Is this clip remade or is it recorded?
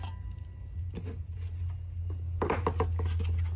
recorded